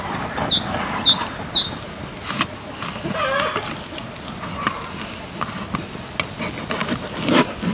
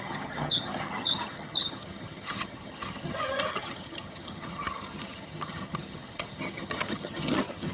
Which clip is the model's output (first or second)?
second